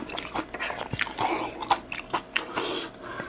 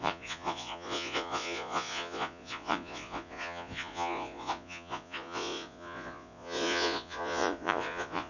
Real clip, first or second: first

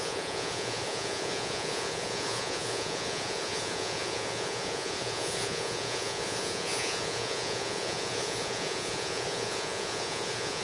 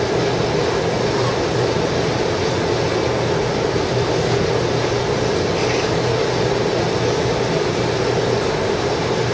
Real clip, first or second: second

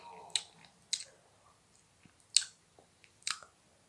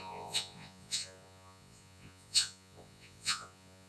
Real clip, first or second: first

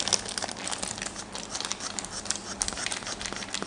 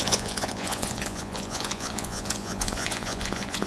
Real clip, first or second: first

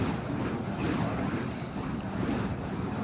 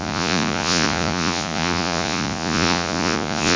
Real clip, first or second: first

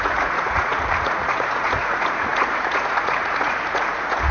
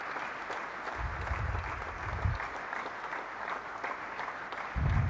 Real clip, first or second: second